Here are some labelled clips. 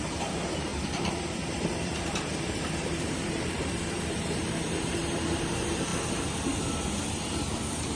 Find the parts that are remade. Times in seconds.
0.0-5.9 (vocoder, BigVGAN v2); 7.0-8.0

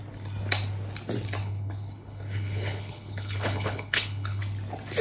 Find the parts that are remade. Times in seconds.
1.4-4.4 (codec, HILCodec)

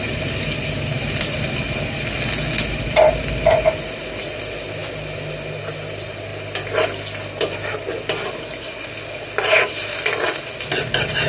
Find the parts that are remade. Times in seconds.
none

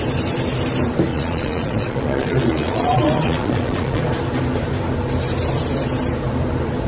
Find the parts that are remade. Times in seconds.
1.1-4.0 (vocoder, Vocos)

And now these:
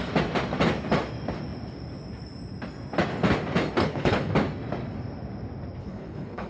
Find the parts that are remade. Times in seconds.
3.8-4.3 (codec, HILCodec); 5.8-6.5

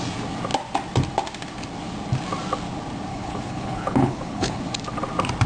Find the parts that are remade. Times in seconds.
3.1-4.6 (codec, HILCodec)

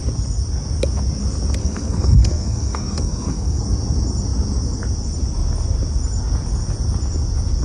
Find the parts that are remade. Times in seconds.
1.6-3.6 (codec, SNAC)